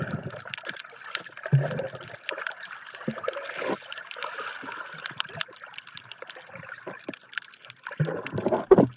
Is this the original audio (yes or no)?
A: yes